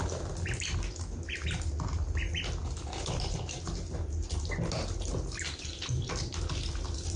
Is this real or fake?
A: real